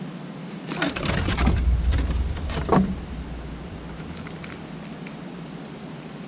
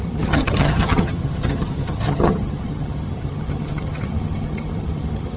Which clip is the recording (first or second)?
first